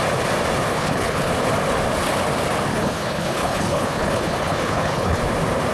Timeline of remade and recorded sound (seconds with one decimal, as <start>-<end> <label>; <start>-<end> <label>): 0.0-0.7 recorded; 0.7-1.3 remade; 1.3-2.7 recorded; 2.7-5.2 remade; 5.2-5.7 recorded